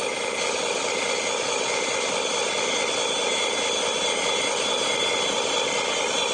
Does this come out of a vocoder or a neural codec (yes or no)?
no